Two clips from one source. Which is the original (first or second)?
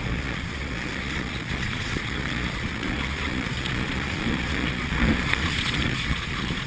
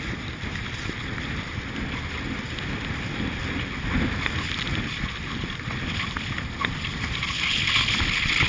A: second